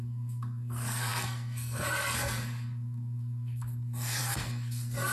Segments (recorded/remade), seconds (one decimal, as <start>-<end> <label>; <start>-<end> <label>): 0.0-5.1 remade